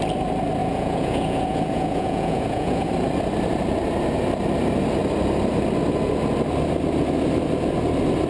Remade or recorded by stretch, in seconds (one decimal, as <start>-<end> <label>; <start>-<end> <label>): 0.0-0.6 recorded; 0.6-2.9 remade; 2.9-8.3 recorded